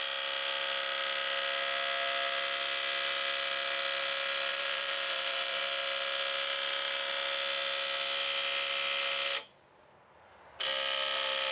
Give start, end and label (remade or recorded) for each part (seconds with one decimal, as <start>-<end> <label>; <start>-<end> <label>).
0.0-4.5 recorded; 4.5-5.6 remade; 5.6-11.5 recorded